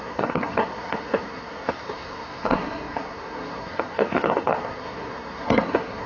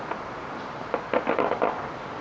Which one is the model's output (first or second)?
first